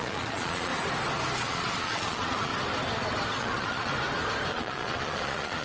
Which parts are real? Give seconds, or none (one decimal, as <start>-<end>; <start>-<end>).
0.7-1.4; 2.5-3.4; 3.9-4.5